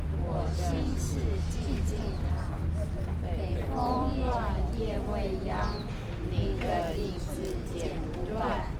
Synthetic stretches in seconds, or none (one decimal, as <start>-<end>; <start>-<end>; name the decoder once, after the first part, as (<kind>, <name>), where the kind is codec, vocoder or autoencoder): 3.5-4.8 (vocoder, BigVGAN v2)